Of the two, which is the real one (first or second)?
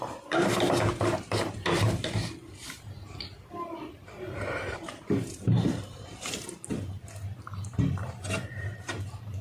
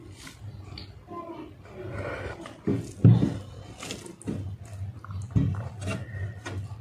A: second